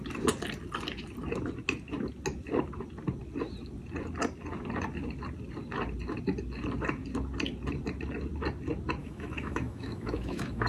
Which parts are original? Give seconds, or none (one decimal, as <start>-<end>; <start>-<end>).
0.0-9.0